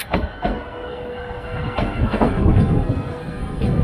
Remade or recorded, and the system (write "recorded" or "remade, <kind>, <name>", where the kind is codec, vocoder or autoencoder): remade, codec, SNAC